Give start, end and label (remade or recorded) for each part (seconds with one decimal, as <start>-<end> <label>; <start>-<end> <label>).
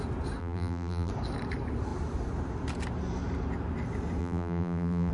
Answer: 0.0-0.4 recorded; 0.4-1.1 remade; 1.1-4.2 recorded; 4.2-5.1 remade